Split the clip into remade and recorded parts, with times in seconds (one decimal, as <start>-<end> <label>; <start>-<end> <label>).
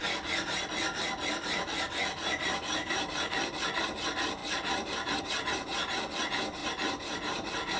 0.0-4.4 recorded; 4.4-5.2 remade; 5.2-6.6 recorded; 6.6-7.8 remade